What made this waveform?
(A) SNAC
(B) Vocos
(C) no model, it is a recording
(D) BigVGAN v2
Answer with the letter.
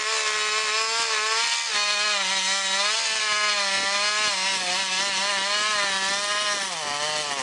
C